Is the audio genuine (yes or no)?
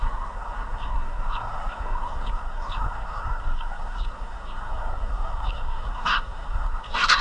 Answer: no